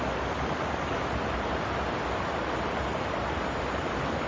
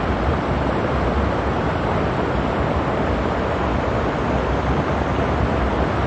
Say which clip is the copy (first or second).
first